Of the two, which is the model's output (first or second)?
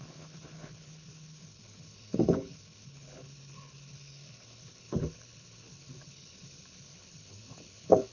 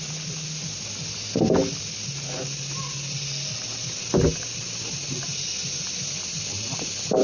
first